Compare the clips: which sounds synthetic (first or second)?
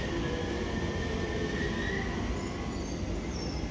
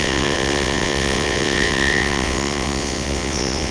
second